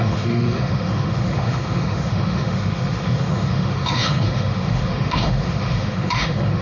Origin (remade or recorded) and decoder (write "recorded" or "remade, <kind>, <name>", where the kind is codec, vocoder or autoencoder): remade, autoencoder, DAC-VAE